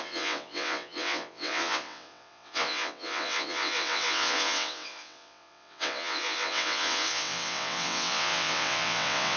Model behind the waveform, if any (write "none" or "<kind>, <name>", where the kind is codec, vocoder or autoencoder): vocoder, WaveNeXt